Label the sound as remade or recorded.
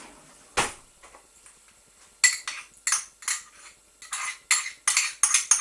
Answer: recorded